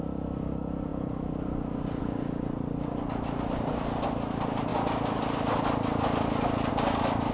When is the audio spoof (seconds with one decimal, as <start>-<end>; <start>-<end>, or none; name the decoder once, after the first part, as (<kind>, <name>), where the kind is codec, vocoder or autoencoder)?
none